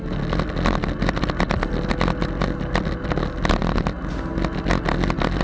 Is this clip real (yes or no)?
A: yes